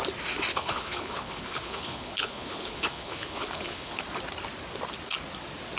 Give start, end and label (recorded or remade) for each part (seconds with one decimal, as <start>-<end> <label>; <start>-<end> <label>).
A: 0.0-0.5 recorded; 0.5-4.0 remade; 4.0-5.8 recorded